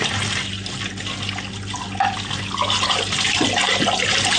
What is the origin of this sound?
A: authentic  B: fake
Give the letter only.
A